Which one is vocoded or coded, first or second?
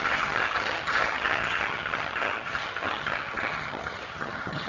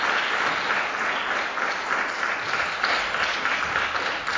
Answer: first